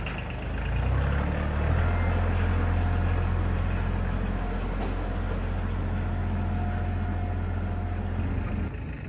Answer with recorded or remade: recorded